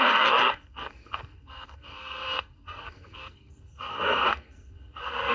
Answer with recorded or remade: remade